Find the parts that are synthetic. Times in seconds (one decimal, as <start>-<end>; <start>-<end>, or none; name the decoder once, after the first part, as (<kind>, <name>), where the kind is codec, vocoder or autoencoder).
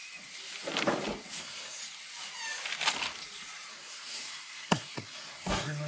1.4-1.8 (codec, SNAC); 3.7-5.9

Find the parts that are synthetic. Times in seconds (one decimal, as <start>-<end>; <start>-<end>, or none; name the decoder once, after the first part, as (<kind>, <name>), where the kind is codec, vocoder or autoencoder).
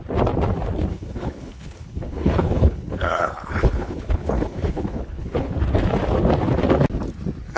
0.9-5.5 (codec, HILCodec)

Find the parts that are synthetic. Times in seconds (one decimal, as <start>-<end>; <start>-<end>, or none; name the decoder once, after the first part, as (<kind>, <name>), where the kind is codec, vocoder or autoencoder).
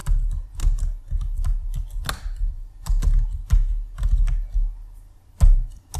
none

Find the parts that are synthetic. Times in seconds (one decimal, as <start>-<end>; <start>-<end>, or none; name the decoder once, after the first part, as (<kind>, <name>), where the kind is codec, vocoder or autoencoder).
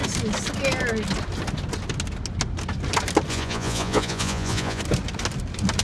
3.3-4.8 (vocoder, Vocos)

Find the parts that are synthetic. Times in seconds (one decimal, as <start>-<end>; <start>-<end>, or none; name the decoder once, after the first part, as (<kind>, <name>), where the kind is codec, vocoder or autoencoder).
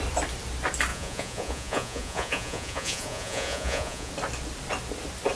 0.9-4.1 (vocoder, Vocos)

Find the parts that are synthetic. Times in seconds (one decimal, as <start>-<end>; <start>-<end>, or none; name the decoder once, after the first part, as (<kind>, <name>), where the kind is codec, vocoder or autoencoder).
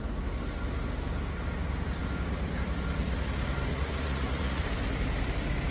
3.7-4.6 (vocoder, Vocos)